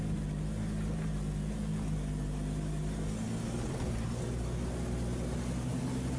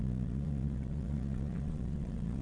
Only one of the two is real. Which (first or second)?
first